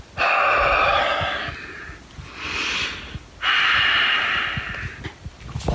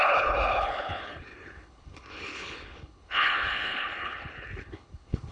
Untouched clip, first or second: first